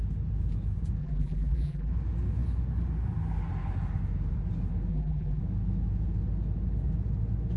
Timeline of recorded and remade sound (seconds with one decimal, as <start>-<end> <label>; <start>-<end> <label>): 0.0-1.0 recorded; 1.0-1.9 remade; 1.9-4.9 recorded; 4.9-5.4 remade; 5.4-7.6 recorded